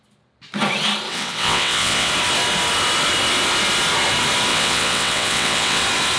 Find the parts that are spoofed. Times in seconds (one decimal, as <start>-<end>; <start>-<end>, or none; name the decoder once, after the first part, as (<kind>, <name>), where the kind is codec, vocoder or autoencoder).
1.1-2.1 (vocoder, WaveNeXt); 4.5-5.8